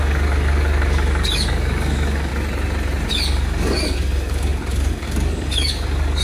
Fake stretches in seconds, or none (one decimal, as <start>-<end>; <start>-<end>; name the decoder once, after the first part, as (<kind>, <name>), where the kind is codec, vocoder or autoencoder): 0.0-2.3 (codec, DAC); 3.1-6.2